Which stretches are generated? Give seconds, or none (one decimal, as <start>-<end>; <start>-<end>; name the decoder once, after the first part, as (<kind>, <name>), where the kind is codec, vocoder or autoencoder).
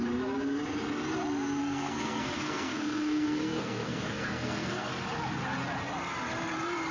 1.6-4.9 (codec, SNAC)